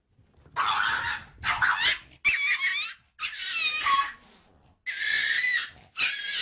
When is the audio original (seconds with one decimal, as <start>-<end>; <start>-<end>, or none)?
0.0-6.4